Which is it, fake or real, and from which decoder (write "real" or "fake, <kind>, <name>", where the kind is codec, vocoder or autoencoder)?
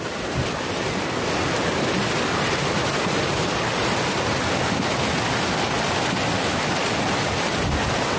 real